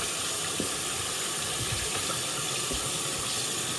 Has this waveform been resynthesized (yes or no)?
no